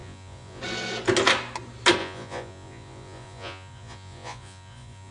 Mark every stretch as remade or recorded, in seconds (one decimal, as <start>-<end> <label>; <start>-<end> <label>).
0.0-0.6 remade; 0.6-2.0 recorded; 2.0-5.1 remade